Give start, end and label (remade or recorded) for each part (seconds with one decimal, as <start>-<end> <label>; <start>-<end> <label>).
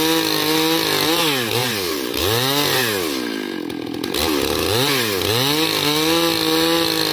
0.0-1.6 recorded; 1.6-2.2 remade; 2.2-7.1 recorded